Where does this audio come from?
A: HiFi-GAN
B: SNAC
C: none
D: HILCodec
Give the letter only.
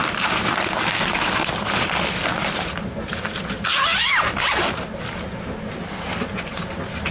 C